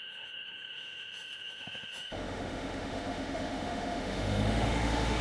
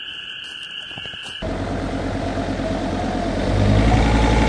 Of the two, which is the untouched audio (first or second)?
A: second